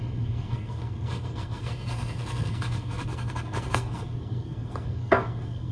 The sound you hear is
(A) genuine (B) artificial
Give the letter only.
B